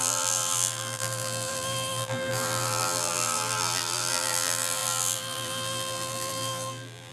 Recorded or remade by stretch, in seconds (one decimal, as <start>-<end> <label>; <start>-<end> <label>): 0.0-7.1 remade

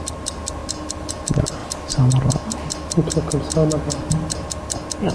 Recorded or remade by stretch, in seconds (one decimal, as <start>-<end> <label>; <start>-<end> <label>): 0.0-0.6 remade; 0.6-1.1 recorded; 1.1-1.6 remade; 1.6-5.1 recorded